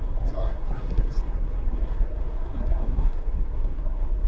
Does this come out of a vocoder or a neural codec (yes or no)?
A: yes